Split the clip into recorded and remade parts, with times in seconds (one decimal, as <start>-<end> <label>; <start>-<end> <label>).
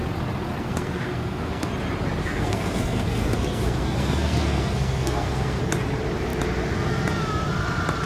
0.0-0.6 recorded; 0.6-1.7 remade; 1.7-2.2 recorded; 2.2-5.6 remade; 5.6-8.1 recorded